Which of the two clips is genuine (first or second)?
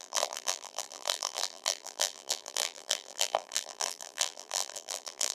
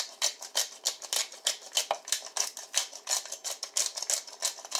second